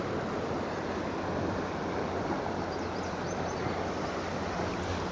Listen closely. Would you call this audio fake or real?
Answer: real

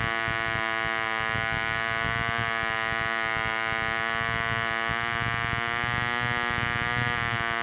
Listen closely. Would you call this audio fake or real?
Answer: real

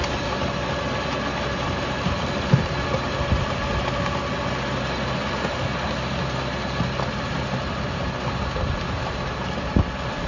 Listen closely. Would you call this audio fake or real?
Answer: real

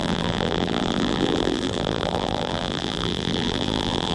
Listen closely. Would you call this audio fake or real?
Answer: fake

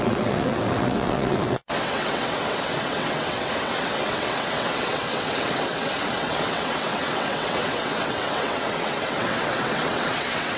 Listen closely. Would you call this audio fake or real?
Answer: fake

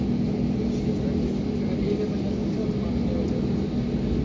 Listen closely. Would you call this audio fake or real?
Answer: real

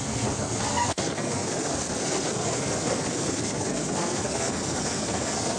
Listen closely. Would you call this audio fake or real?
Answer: fake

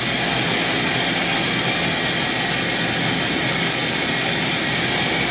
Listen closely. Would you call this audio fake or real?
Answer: real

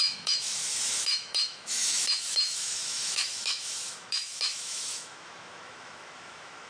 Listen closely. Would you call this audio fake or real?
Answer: fake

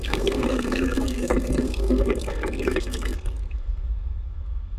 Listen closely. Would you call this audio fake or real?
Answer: fake